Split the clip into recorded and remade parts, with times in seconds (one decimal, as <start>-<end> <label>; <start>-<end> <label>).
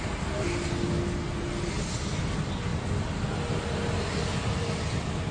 0.0-5.3 recorded